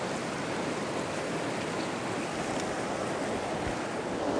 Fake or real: real